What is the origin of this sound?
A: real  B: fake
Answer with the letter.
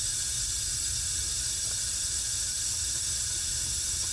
A